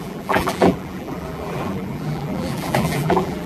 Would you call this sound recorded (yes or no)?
no